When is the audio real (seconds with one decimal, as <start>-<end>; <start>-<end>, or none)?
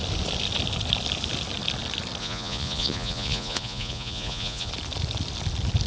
0.0-2.2; 4.7-5.9